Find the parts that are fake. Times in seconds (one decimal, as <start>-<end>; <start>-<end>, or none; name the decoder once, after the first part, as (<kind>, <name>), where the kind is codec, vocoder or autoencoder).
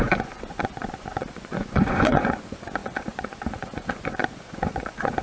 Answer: 0.0-5.2 (vocoder, Vocos)